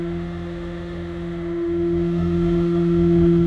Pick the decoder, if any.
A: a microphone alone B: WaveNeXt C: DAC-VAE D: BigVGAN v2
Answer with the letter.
C